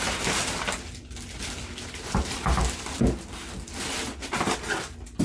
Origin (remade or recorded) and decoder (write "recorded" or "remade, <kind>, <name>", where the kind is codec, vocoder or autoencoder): recorded